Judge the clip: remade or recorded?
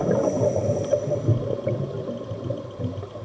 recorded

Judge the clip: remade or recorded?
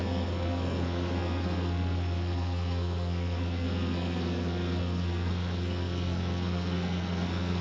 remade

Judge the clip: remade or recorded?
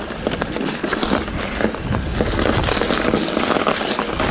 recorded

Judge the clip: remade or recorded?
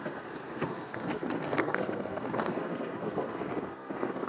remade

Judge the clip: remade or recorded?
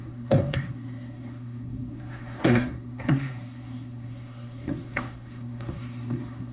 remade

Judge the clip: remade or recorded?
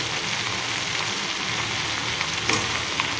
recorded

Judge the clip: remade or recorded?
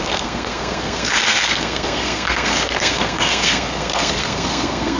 remade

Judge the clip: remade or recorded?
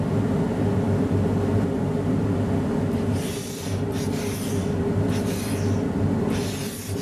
recorded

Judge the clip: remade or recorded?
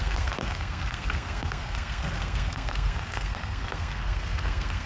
remade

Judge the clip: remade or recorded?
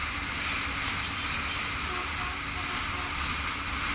recorded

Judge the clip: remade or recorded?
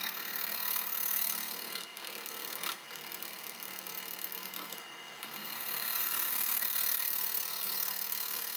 remade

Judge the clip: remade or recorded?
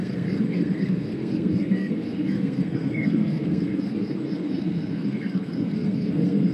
remade